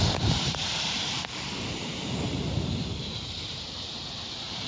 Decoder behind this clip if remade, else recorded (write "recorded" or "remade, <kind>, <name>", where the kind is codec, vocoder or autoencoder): remade, vocoder, BigVGAN v2